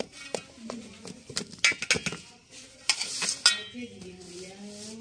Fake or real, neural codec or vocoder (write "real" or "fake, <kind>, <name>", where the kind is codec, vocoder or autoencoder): real